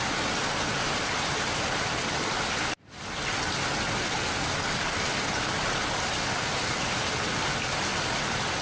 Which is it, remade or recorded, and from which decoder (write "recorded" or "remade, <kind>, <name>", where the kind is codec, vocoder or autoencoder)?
recorded